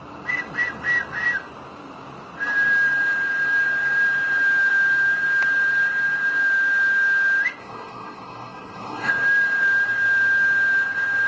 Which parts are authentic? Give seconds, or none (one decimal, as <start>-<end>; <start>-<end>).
0.0-7.6; 9.1-11.3